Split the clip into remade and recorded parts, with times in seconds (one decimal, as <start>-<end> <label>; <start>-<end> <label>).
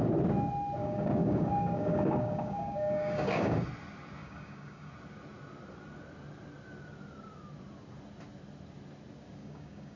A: 0.0-0.8 recorded; 0.8-3.6 remade; 3.6-4.2 recorded; 4.2-4.9 remade; 4.9-9.4 recorded; 9.4-10.0 remade